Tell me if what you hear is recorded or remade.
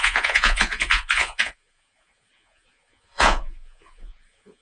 remade